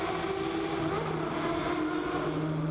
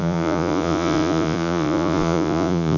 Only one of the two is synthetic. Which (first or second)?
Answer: second